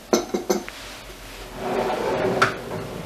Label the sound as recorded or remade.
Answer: recorded